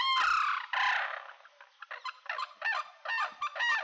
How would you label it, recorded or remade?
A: recorded